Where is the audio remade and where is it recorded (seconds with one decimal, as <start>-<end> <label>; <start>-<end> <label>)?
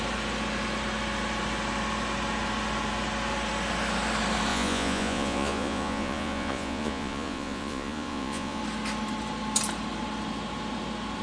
0.0-4.5 recorded; 4.5-8.6 remade; 8.6-11.2 recorded